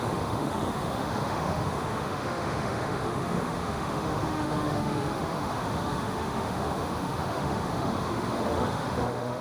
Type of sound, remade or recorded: remade